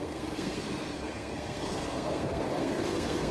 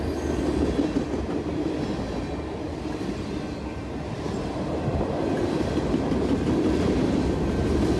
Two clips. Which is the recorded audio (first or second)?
second